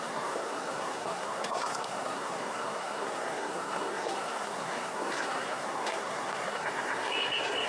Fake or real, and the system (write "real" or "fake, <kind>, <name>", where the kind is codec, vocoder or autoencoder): fake, codec, SNAC